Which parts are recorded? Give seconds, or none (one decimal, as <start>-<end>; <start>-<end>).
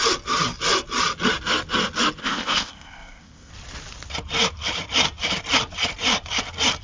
0.0-2.2; 3.5-6.8